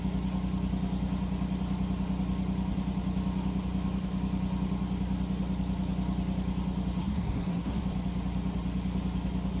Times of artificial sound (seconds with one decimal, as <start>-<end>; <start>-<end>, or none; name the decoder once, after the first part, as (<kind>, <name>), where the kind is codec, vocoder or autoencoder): 7.0-7.8 (codec, SNAC)